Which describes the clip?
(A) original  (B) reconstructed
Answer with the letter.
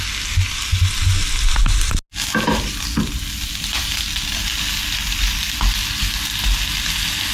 A